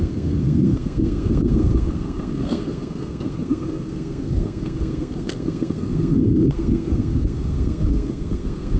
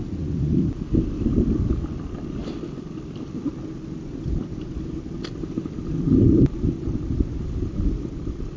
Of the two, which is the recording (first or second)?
second